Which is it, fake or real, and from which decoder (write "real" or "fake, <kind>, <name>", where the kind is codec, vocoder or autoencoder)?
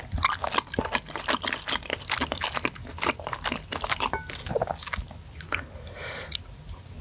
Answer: real